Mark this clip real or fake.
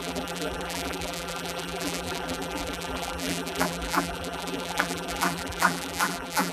fake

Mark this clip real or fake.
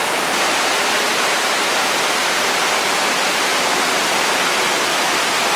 real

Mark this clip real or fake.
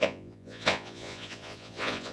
fake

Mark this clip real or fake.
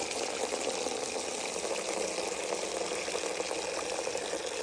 real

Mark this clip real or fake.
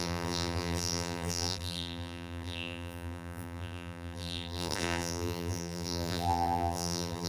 fake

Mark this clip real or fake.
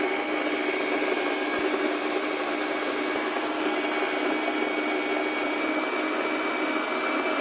real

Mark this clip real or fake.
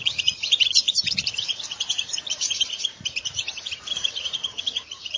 fake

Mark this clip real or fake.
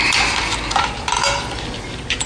real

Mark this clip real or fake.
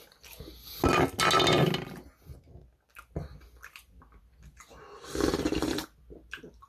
real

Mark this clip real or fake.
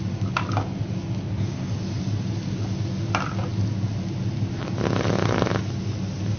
real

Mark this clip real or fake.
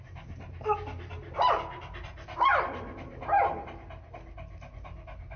real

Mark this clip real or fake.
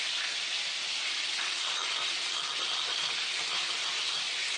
real